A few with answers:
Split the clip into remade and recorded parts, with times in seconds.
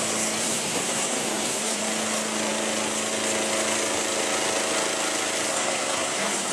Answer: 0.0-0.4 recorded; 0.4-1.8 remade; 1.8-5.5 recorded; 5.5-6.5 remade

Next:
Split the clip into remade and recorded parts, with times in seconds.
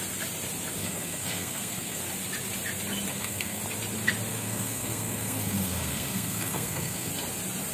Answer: 0.0-0.8 recorded; 0.8-2.0 remade; 2.0-3.1 recorded; 3.1-3.6 remade; 3.6-4.3 recorded; 4.3-7.1 remade; 7.1-7.7 recorded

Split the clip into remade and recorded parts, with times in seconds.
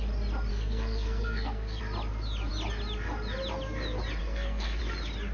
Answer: 0.0-0.5 recorded; 0.5-1.8 remade; 1.8-4.2 recorded; 4.2-4.8 remade; 4.8-5.3 recorded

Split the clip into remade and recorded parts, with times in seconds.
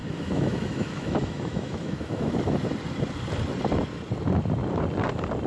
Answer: 0.0-2.3 remade; 2.3-5.5 recorded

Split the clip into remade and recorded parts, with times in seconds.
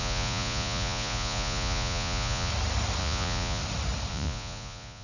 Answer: 0.0-2.5 remade; 2.5-3.0 recorded; 3.0-3.6 remade; 3.6-4.1 recorded; 4.1-5.0 remade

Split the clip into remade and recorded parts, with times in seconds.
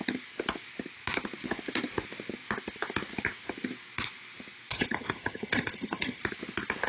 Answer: 0.0-4.7 recorded; 4.7-6.2 remade; 6.2-6.9 recorded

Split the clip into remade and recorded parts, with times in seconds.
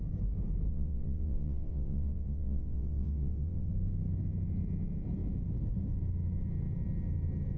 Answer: 0.0-0.7 recorded; 0.7-3.7 remade; 3.7-7.6 recorded